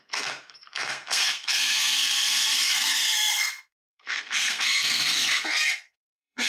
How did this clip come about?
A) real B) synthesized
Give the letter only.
B